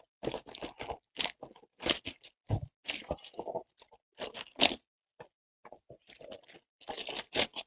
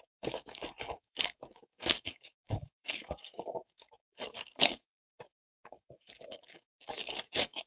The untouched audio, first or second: first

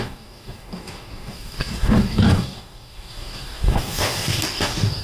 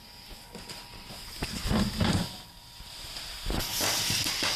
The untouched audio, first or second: second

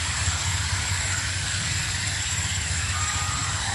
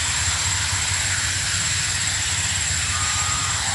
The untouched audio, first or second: second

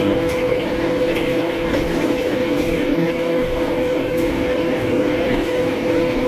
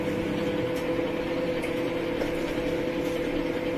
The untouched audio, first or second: second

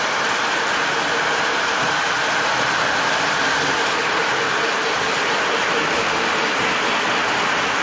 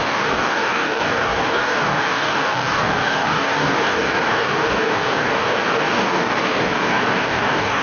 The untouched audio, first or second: first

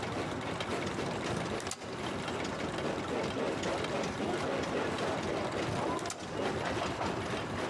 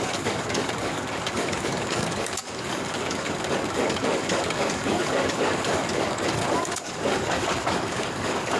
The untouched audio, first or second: first